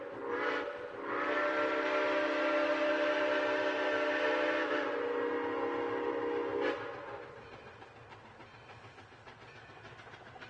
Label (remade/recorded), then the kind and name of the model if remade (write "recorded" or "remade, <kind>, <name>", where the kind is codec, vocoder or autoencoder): recorded